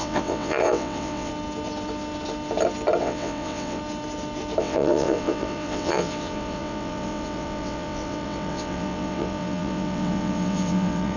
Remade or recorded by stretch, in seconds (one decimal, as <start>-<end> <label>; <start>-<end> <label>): 0.0-1.3 remade; 1.3-3.0 recorded; 3.0-3.8 remade; 3.8-4.6 recorded; 4.6-11.2 remade

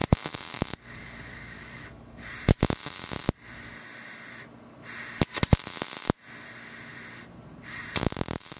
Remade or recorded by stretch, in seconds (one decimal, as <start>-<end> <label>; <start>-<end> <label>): 0.0-2.3 remade; 2.3-8.6 recorded

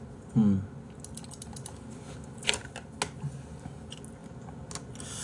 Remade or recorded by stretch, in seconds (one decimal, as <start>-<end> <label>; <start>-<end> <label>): 0.0-5.2 recorded